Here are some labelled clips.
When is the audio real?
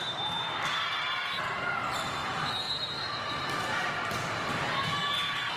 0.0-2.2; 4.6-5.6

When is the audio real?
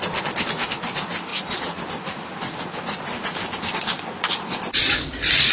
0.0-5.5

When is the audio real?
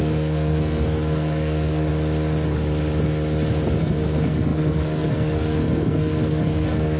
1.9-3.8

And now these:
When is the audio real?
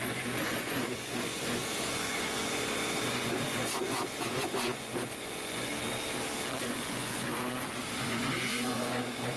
5.7-6.6; 7.3-8.0